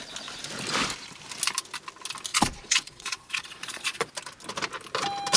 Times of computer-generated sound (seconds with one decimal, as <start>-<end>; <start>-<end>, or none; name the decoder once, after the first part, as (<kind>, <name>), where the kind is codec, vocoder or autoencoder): 2.3-4.1 (vocoder, Vocos)